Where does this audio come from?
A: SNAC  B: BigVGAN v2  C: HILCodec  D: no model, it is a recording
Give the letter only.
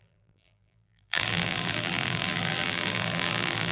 B